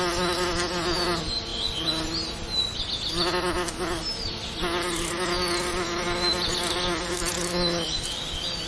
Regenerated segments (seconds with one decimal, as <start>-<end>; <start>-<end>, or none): none